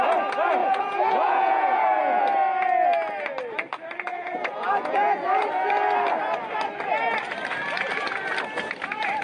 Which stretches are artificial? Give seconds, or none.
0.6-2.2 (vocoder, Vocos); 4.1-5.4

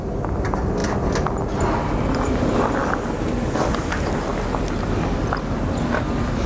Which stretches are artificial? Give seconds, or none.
none